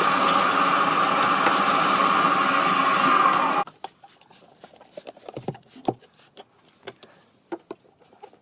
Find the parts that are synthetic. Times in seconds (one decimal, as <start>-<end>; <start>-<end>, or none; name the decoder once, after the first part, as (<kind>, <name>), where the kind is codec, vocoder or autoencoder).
4.7-5.7 (vocoder, BigVGAN v2)